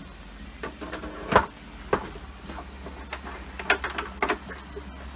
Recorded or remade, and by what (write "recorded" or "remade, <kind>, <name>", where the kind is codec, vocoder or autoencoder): recorded